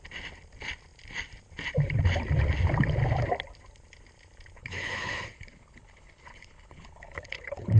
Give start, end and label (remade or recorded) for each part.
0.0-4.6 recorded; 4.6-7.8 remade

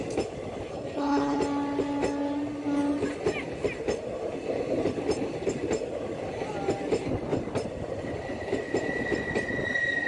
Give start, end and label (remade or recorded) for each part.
0.0-0.7 recorded; 0.7-1.4 remade; 1.4-10.1 recorded

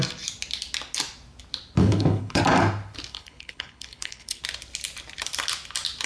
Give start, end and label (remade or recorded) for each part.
0.0-1.8 recorded; 1.8-2.4 remade; 2.4-3.1 recorded; 3.1-4.4 remade; 4.4-6.1 recorded

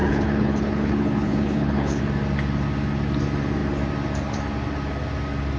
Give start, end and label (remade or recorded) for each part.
0.0-2.0 remade; 2.0-5.6 recorded

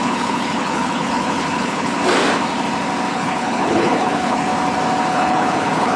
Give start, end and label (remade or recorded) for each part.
0.0-2.0 remade; 2.0-3.1 recorded; 3.1-4.5 remade; 4.5-5.1 recorded; 5.1-6.0 remade